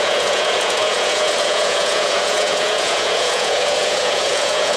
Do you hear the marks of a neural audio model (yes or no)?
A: yes